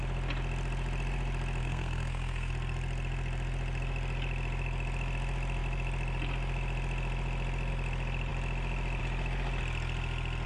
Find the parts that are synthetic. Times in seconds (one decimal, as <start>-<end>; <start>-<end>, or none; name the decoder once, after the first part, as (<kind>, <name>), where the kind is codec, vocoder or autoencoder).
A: 1.6-2.5 (codec, SNAC)